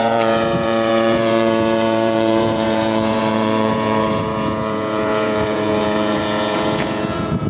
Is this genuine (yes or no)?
no